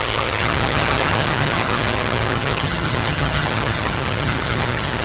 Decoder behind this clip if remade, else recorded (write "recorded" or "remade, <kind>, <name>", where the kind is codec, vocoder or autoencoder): remade, vocoder, HiFi-GAN